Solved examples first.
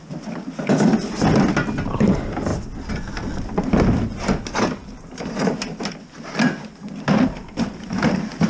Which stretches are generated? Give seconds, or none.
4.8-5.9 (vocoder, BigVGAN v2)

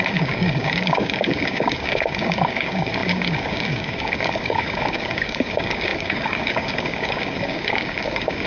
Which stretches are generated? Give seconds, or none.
0.0-8.5 (codec, DAC)

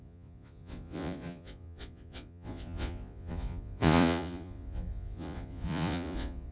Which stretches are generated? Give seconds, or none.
0.0-6.5 (vocoder, Vocos)

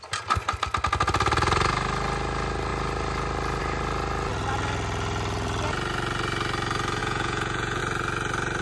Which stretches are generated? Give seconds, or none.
7.0-7.8 (vocoder, Vocos)